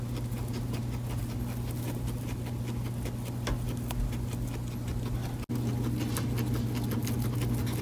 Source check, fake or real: real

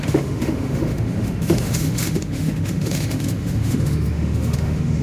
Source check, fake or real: fake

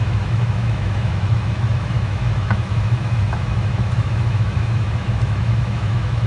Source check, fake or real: fake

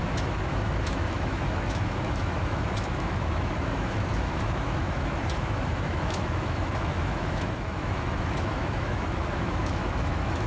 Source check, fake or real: fake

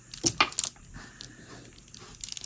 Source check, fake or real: real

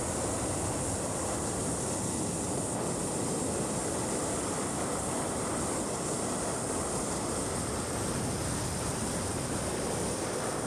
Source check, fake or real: real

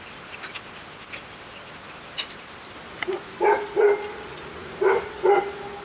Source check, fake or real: real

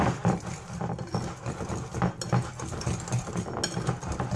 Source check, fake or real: real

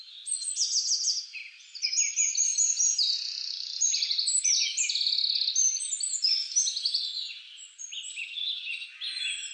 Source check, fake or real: real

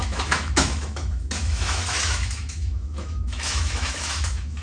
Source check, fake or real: fake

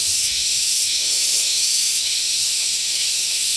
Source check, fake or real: fake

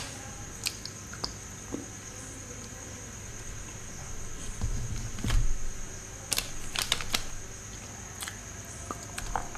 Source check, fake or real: real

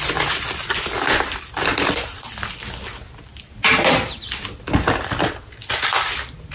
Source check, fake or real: real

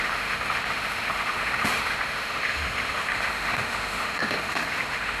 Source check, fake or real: fake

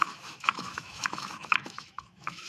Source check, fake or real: fake